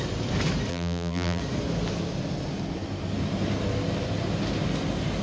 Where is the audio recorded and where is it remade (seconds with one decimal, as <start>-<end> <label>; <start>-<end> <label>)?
0.0-0.7 recorded; 0.7-1.4 remade; 1.4-5.2 recorded

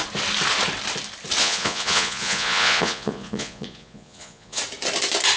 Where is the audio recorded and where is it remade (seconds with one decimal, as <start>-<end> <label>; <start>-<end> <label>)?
0.0-1.4 recorded; 1.4-4.6 remade; 4.6-5.4 recorded

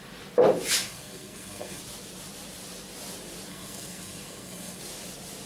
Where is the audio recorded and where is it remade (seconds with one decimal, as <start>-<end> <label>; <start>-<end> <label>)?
0.0-0.8 recorded; 0.8-1.8 remade; 1.8-3.5 recorded; 3.5-4.8 remade; 4.8-5.5 recorded